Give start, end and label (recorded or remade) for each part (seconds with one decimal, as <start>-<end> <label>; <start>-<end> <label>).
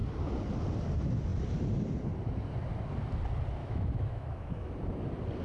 0.0-3.6 recorded; 3.6-4.7 remade; 4.7-5.4 recorded